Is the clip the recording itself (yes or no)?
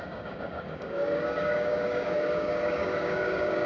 no